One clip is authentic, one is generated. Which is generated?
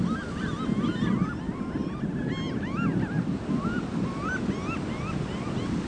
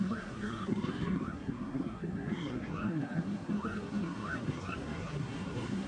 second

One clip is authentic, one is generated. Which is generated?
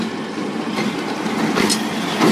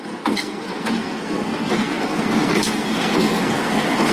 second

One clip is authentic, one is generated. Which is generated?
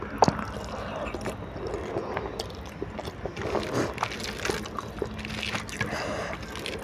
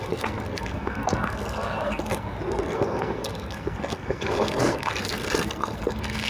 second